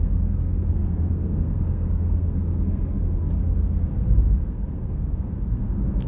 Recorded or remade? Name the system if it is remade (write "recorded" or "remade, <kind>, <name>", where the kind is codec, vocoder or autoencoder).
remade, codec, SNAC